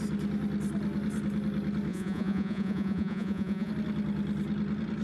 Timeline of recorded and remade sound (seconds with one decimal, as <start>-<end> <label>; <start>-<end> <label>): 0.0-1.9 recorded; 1.9-3.7 remade; 3.7-5.0 recorded